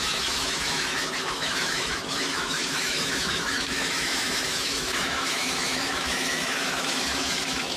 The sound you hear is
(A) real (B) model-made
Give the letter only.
B